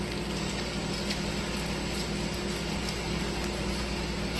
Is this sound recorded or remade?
recorded